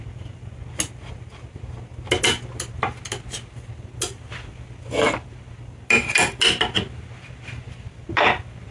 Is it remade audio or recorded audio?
recorded